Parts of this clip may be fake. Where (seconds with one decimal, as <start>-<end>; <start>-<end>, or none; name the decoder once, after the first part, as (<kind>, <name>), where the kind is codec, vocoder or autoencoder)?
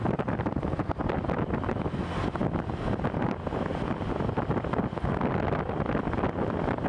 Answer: none